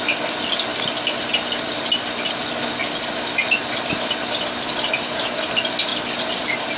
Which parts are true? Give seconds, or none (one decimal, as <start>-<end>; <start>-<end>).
0.0-2.8; 4.9-5.9